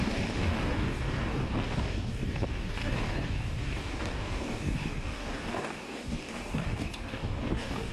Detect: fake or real fake